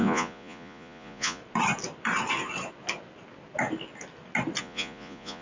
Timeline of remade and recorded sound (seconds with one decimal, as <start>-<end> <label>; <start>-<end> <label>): 0.0-1.4 remade; 1.4-4.6 recorded; 4.6-5.4 remade

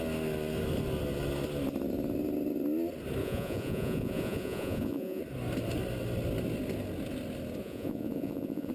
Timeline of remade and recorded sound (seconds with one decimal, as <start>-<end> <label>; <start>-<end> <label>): 0.0-3.2 recorded; 3.2-5.2 remade; 5.2-7.6 recorded; 7.6-8.7 remade

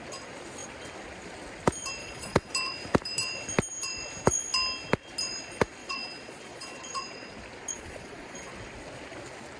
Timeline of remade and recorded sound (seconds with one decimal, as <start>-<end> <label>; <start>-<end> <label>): 0.0-2.0 recorded; 2.0-2.5 remade; 2.5-5.8 recorded; 5.8-7.3 remade; 7.3-7.7 recorded; 7.7-8.5 remade; 8.5-9.6 recorded

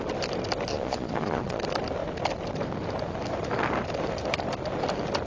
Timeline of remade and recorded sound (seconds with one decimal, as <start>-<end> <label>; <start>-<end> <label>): 0.0-0.7 recorded; 0.7-1.6 remade; 1.6-5.3 recorded

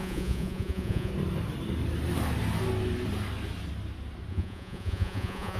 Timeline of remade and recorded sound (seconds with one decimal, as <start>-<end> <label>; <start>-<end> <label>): 0.0-1.1 remade; 1.1-4.3 recorded; 4.3-5.6 remade

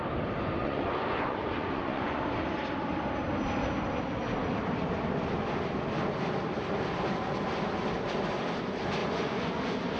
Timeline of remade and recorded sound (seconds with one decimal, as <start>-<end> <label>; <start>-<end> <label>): 0.0-0.6 recorded; 0.6-2.2 remade; 2.2-9.0 recorded; 9.0-9.6 remade; 9.6-10.0 recorded

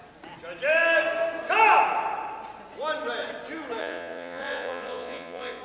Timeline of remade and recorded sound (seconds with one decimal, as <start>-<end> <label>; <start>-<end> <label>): 0.0-3.8 recorded; 3.8-5.6 remade